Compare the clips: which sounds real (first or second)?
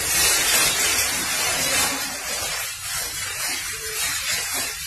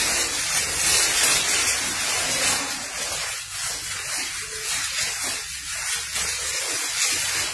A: second